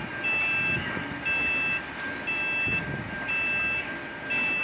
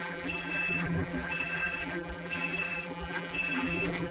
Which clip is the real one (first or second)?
first